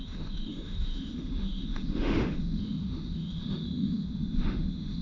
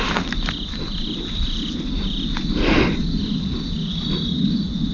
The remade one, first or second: first